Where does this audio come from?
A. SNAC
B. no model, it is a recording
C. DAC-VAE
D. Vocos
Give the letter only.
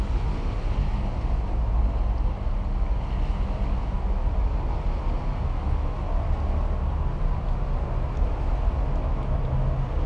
B